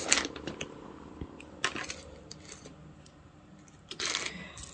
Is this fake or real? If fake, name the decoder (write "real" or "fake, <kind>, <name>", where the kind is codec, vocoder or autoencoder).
real